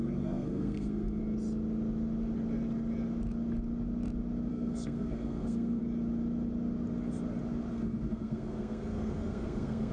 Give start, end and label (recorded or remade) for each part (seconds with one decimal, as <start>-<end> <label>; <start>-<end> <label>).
0.0-1.2 remade; 1.2-4.5 recorded; 4.5-5.8 remade; 5.8-7.7 recorded; 7.7-9.9 remade